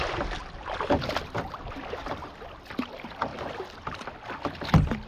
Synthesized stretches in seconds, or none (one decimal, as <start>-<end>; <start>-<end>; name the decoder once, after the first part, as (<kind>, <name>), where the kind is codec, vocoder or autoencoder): none